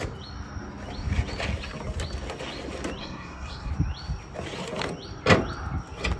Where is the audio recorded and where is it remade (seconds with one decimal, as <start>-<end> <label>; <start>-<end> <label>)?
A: 0.0-3.0 recorded; 3.0-3.7 remade; 3.7-6.2 recorded